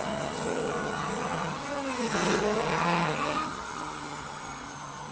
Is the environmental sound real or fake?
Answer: fake